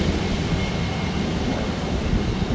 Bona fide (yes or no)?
yes